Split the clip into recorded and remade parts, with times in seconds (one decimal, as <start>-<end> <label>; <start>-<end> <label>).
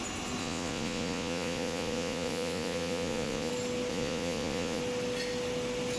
0.0-0.4 recorded; 0.4-3.5 remade; 3.5-3.9 recorded; 3.9-4.8 remade; 4.8-6.0 recorded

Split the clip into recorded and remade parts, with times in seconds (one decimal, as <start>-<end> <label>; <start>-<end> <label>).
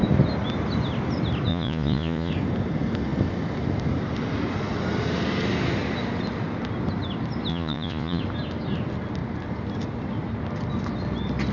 0.0-1.5 recorded; 1.5-2.3 remade; 2.3-7.5 recorded; 7.5-8.2 remade; 8.2-11.5 recorded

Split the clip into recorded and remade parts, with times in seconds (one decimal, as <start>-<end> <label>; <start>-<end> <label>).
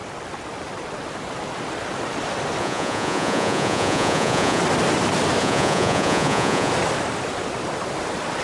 0.0-2.6 recorded; 2.6-4.6 remade; 4.6-5.4 recorded; 5.4-6.7 remade; 6.7-8.4 recorded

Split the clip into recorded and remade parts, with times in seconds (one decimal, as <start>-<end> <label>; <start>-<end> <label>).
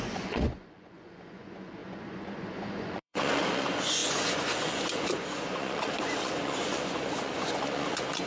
0.0-8.3 remade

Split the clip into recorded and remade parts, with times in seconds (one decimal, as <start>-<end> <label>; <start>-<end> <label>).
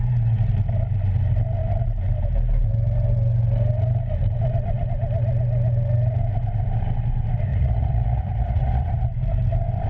0.0-7.5 recorded; 7.5-9.2 remade; 9.2-9.9 recorded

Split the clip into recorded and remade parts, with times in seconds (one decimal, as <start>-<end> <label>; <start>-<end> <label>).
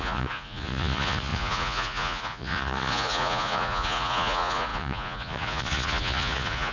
0.0-6.7 remade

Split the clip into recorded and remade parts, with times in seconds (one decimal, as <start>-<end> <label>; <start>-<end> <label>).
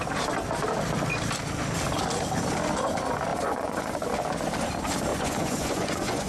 0.0-3.3 recorded; 3.3-3.9 remade; 3.9-5.1 recorded; 5.1-6.3 remade